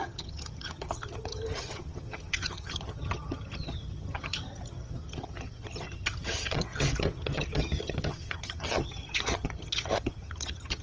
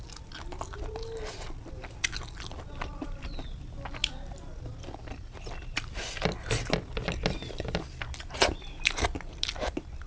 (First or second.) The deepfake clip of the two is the first